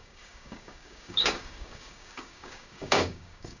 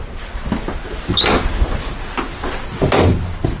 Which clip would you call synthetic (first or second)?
first